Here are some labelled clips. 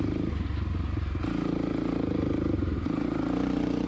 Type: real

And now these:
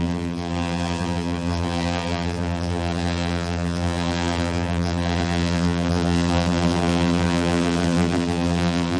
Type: fake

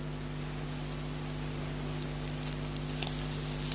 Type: real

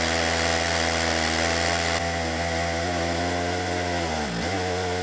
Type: real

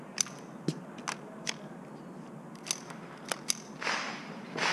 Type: real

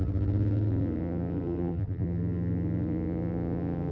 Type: fake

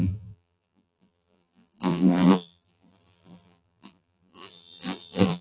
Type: fake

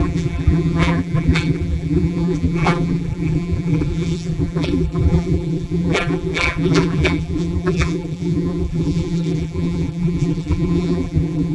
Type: fake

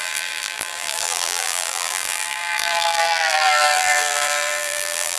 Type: fake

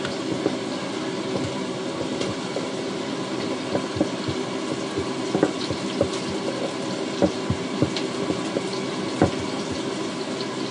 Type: fake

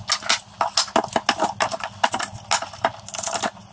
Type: real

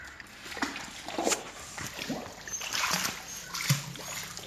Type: real